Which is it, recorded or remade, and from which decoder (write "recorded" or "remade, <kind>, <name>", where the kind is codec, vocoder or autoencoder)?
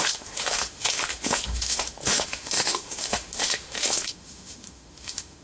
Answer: remade, autoencoder, DAC-VAE